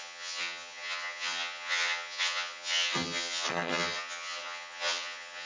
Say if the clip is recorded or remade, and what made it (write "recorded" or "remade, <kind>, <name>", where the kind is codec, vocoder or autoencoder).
remade, vocoder, HiFi-GAN